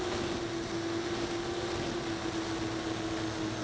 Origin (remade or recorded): recorded